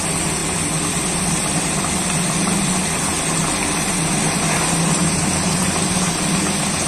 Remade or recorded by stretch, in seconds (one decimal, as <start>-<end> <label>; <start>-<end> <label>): 0.0-6.9 recorded